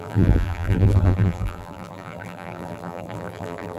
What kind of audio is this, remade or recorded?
remade